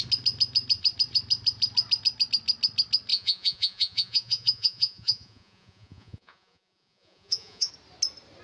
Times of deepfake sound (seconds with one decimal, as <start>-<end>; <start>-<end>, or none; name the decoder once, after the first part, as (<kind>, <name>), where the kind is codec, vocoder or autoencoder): 3.1-7.7 (vocoder, Vocos)